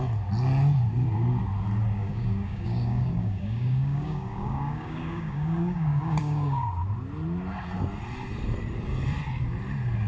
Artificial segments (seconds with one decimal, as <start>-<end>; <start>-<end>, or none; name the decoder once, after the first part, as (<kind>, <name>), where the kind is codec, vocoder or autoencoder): 2.0-6.7 (codec, DAC)